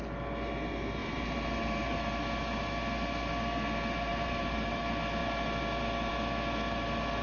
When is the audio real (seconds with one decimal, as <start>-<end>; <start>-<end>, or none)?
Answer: 0.0-1.0; 1.9-4.1; 4.8-7.2